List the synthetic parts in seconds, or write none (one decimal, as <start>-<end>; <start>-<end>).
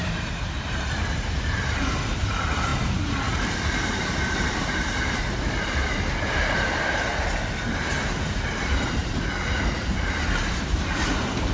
0.0-7.1; 7.6-9.0; 9.6-11.5